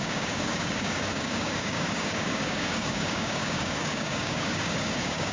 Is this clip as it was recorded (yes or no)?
no